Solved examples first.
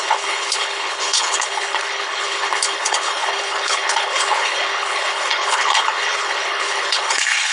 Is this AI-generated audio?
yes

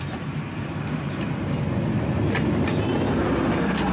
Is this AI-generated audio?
no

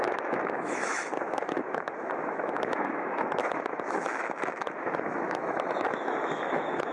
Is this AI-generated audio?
yes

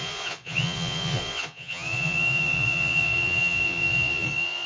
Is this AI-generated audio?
yes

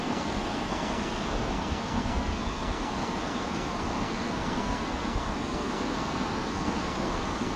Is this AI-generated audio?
yes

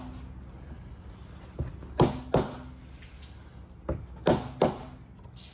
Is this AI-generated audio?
no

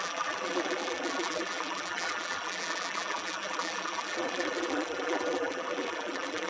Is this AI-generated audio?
yes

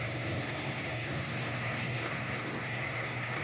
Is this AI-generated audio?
yes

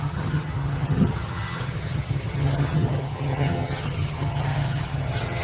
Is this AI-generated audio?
yes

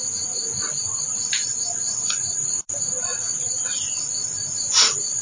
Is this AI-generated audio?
yes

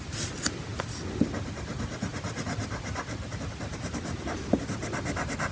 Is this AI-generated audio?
no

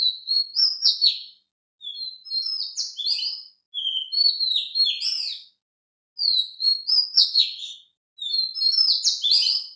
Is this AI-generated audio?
no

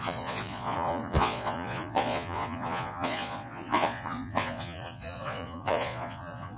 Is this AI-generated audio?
yes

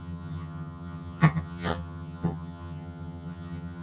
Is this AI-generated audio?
yes